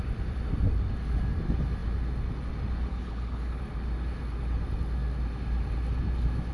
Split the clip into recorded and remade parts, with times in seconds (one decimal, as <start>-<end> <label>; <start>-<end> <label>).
0.0-2.9 recorded; 2.9-3.6 remade; 3.6-6.5 recorded

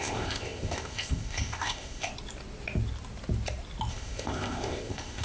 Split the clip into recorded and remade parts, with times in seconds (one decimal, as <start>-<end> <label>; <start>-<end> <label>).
0.0-2.1 remade; 2.1-3.9 recorded; 3.9-5.2 remade

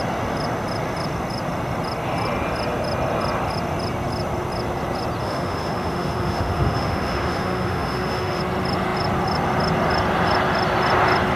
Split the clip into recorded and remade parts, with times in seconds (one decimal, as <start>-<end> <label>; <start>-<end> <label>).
0.0-5.2 recorded; 5.2-8.4 remade; 8.4-11.4 recorded

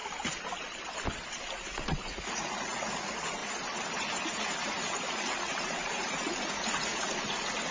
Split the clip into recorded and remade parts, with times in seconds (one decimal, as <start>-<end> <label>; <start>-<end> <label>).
0.0-1.3 recorded; 1.3-3.4 remade; 3.4-5.1 recorded; 5.1-7.7 remade

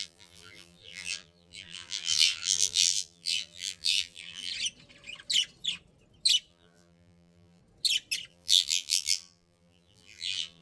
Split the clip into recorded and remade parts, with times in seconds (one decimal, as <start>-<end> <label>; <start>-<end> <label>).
0.0-4.5 remade; 4.5-6.5 recorded; 6.5-7.6 remade; 7.6-8.3 recorded; 8.3-10.6 remade

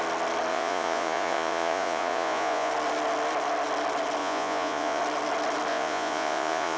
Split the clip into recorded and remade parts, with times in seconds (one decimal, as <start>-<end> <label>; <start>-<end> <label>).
0.0-0.5 recorded; 0.5-2.7 remade; 2.7-4.2 recorded; 4.2-5.0 remade; 5.0-5.7 recorded; 5.7-6.8 remade

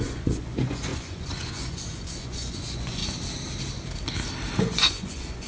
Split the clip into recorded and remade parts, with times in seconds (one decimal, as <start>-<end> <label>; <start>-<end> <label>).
0.0-3.0 remade; 3.0-4.6 recorded; 4.6-5.5 remade